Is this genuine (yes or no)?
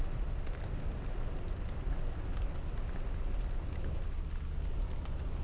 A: yes